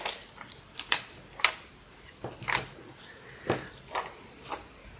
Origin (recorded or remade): remade